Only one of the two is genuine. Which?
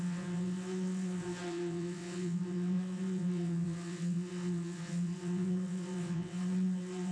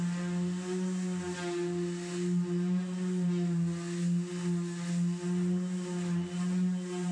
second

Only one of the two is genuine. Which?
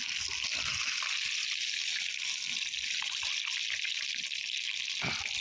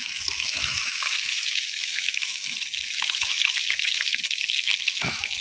first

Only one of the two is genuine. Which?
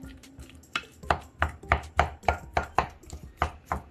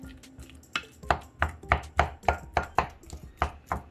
second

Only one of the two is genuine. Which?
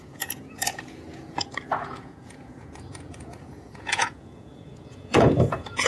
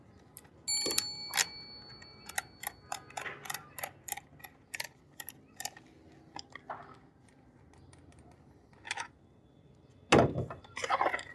second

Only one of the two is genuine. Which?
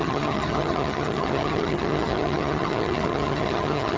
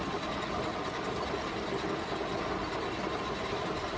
second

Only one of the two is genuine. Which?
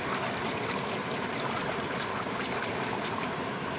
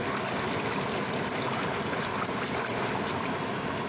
second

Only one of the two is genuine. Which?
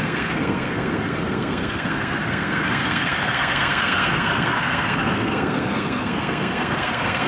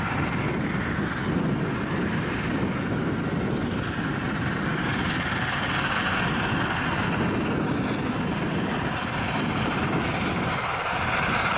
second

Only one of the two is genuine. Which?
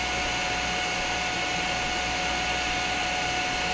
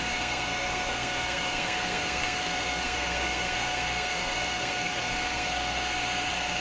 first